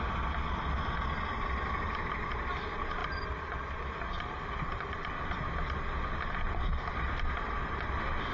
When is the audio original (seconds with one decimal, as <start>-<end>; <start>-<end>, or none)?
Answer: 0.0-8.3